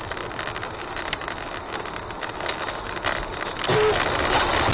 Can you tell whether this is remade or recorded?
recorded